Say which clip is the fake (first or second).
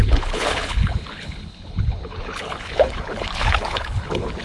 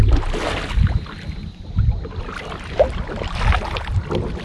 first